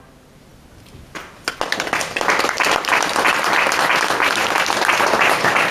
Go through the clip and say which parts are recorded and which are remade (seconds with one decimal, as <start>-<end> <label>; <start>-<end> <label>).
0.0-5.7 recorded